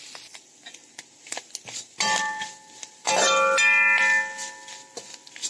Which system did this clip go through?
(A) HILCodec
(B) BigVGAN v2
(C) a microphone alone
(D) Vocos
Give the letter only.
C